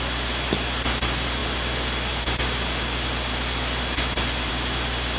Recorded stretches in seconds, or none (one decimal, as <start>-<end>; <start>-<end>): 0.0-5.2